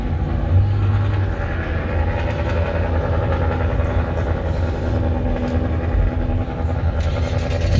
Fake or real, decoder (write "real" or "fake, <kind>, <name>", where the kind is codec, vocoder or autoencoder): real